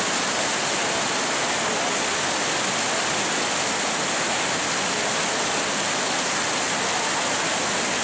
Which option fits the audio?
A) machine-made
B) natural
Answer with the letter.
B